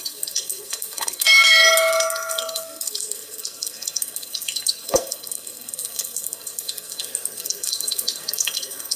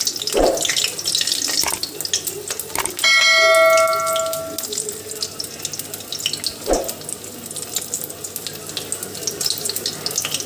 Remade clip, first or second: first